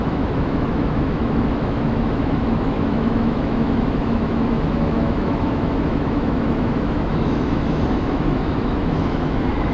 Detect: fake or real fake